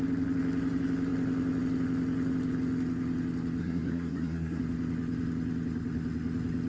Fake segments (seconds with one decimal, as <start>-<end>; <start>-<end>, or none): 3.6-4.6

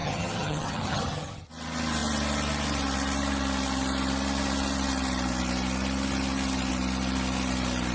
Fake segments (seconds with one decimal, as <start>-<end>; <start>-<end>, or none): 0.0-1.5

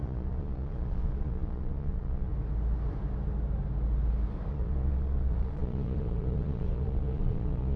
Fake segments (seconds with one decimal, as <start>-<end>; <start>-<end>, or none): 0.0-2.3; 4.5-7.8

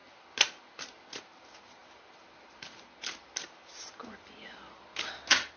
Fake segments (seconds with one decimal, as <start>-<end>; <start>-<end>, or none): none

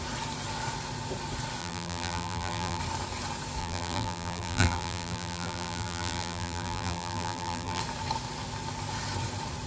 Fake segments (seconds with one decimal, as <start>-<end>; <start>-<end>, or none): 1.6-2.8; 3.6-7.8

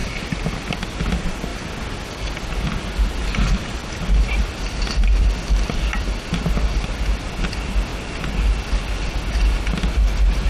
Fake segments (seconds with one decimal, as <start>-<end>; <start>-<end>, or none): none

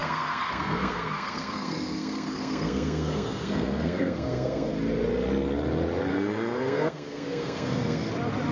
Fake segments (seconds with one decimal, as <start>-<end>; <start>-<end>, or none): 0.0-4.7; 6.1-8.1

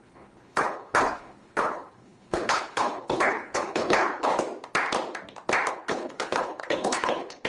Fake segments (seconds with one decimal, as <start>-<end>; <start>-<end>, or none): 0.0-4.3; 5.7-7.5